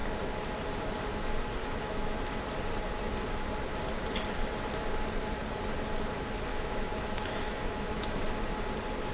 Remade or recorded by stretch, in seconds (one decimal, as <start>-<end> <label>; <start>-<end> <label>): 0.0-1.6 recorded; 1.6-2.4 remade; 2.4-6.5 recorded; 6.5-8.2 remade; 8.2-9.1 recorded